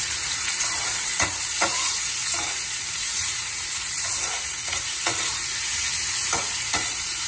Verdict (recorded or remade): remade